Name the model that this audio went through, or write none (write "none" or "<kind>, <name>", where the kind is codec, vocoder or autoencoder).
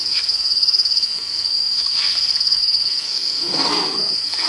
codec, SNAC